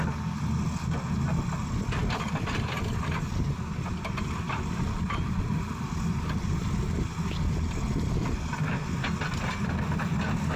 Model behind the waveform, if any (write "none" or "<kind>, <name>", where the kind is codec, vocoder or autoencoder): none